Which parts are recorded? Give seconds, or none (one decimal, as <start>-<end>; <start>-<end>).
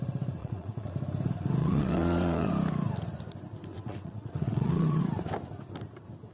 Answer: 0.0-0.4; 0.9-1.6; 2.5-3.7; 5.0-6.3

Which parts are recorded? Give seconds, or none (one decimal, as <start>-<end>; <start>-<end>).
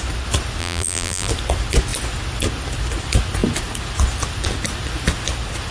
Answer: 0.0-0.6; 1.3-5.7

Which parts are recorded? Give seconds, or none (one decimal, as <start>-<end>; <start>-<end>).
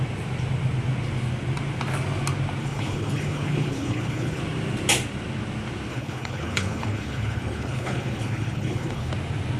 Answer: 0.0-2.6; 4.4-5.9; 9.1-9.6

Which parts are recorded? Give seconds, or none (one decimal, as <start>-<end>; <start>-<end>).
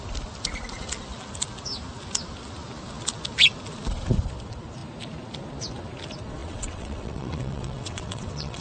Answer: 0.0-6.4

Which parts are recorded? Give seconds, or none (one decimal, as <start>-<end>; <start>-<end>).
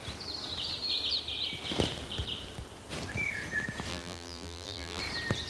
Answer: 0.0-3.9; 5.0-5.5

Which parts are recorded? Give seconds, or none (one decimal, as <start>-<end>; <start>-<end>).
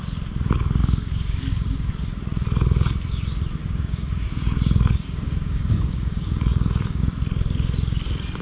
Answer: 0.0-0.8; 1.9-3.6; 7.0-8.4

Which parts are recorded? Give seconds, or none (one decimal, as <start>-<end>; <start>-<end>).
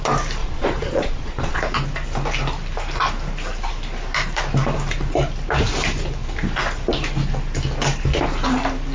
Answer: 0.0-0.4; 1.6-8.9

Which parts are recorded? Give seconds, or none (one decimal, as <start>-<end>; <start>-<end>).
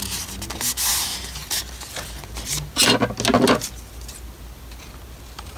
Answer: 0.0-5.6